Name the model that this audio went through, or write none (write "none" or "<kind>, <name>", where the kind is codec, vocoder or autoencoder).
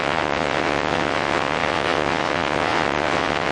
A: vocoder, WaveNeXt